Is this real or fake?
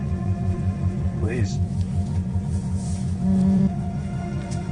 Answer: fake